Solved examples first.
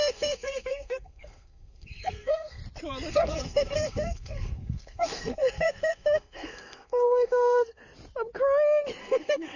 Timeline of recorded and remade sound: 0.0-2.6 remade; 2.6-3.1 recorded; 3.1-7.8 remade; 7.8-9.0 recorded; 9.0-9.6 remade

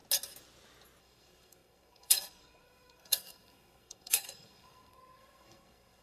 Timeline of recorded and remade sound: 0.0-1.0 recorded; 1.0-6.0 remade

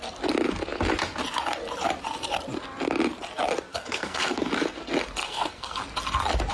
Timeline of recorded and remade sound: 0.0-3.7 recorded; 3.7-4.5 remade; 4.5-5.2 recorded; 5.2-5.8 remade; 5.8-6.5 recorded

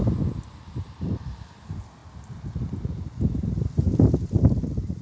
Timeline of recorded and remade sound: 0.0-5.0 recorded

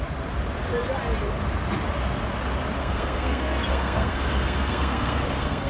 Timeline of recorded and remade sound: 0.0-2.8 recorded; 2.8-5.7 remade

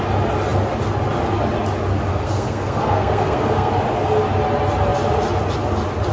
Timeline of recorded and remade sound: 0.0-2.1 recorded; 2.1-3.7 remade; 3.7-6.1 recorded

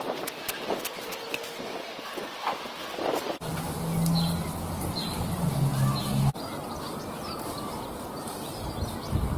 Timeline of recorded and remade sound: 0.0-9.4 recorded